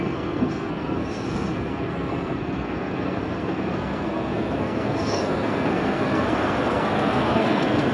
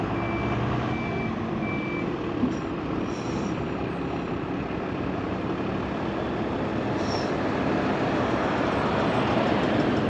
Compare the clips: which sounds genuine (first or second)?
second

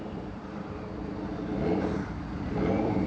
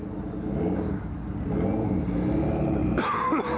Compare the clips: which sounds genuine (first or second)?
second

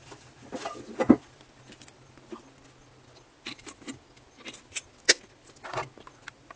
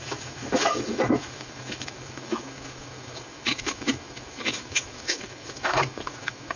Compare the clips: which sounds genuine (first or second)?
first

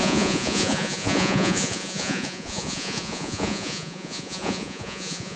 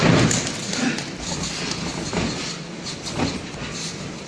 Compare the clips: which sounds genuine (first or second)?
second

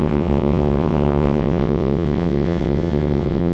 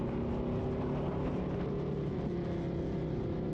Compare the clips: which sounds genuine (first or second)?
second